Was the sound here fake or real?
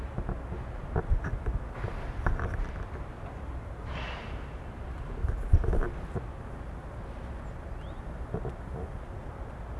real